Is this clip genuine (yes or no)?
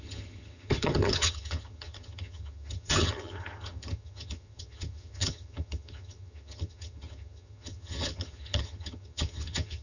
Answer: no